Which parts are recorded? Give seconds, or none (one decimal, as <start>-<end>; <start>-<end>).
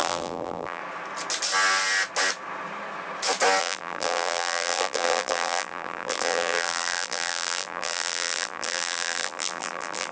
0.8-3.6